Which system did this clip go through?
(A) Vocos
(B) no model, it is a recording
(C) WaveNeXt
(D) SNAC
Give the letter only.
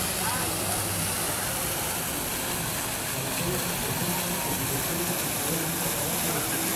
B